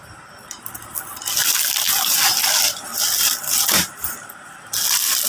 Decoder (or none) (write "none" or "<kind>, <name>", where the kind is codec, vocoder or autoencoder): none